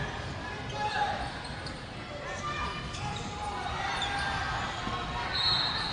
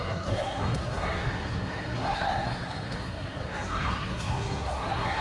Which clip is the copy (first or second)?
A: second